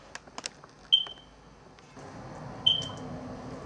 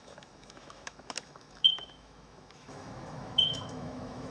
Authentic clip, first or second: first